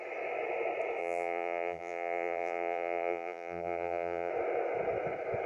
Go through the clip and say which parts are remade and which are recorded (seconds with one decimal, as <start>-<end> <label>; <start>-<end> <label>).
0.0-1.0 recorded; 1.0-4.3 remade; 4.3-5.5 recorded